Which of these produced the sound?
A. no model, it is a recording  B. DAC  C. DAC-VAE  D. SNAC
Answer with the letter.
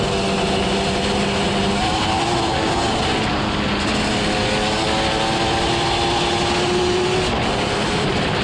A